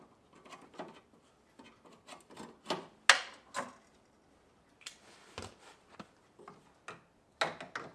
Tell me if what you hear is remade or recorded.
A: recorded